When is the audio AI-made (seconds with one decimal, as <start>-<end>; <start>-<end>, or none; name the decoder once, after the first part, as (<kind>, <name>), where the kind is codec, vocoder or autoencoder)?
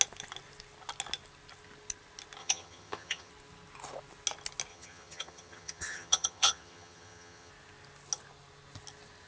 2.4-3.3 (vocoder, HiFi-GAN); 4.7-7.5